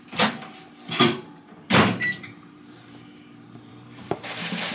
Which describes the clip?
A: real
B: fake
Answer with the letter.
B